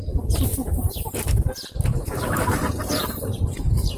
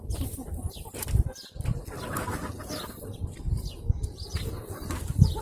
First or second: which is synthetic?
first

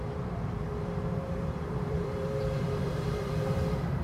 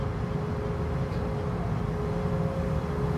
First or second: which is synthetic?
first